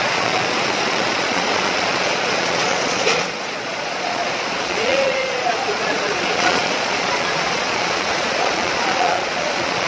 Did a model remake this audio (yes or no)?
yes